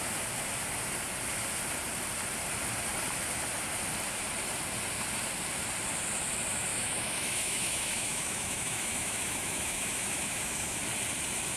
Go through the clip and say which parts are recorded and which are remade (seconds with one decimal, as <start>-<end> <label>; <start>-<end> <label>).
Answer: 0.0-6.7 recorded; 6.7-10.8 remade; 10.8-11.6 recorded